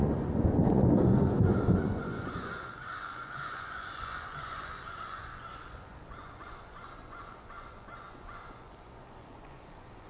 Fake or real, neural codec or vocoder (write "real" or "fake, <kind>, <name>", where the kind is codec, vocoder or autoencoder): fake, vocoder, Vocos